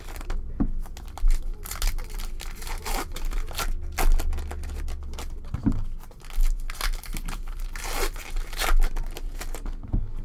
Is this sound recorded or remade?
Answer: recorded